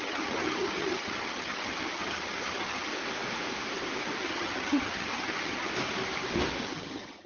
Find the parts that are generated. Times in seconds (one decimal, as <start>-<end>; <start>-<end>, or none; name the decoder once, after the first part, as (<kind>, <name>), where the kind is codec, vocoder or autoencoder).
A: 0.0-2.9 (vocoder, HiFi-GAN); 4.2-5.7; 6.6-7.3